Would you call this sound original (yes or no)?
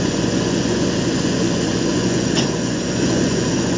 no